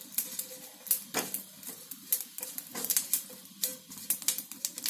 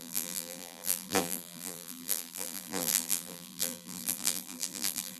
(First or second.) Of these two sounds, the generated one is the second